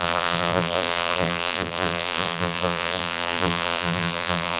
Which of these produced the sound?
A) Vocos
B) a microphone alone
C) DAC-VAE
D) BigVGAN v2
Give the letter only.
D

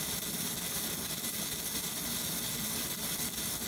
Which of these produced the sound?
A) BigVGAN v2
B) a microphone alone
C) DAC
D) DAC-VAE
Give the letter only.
B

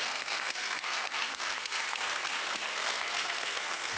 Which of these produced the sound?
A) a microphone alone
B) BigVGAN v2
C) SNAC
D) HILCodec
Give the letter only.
C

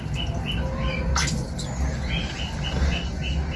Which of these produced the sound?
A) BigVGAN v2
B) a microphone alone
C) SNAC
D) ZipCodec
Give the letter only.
B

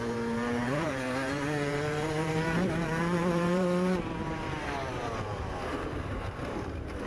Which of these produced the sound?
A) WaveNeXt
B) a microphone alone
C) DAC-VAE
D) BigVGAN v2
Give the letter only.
D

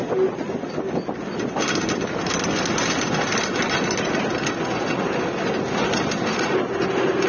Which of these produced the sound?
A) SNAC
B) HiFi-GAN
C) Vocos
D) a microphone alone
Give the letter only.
D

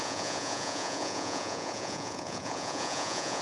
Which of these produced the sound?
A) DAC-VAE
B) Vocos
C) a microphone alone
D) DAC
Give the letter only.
B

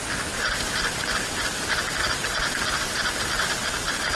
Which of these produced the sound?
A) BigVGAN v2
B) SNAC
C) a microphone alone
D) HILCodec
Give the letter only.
C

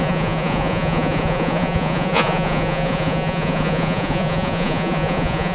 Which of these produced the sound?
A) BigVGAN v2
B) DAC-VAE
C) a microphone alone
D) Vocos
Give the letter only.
D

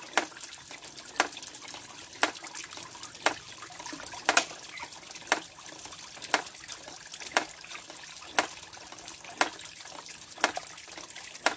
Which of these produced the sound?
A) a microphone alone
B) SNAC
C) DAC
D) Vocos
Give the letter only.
A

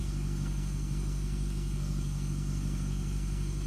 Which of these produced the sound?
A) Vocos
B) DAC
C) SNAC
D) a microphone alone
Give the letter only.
C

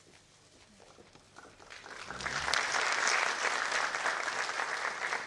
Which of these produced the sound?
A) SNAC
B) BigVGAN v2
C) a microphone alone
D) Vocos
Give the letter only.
C